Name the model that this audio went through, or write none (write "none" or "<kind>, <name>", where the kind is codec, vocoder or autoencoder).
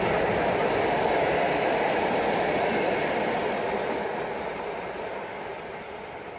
none